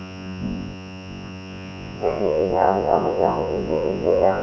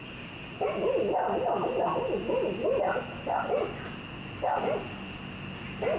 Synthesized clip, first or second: first